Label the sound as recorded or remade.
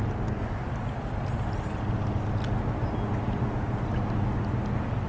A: recorded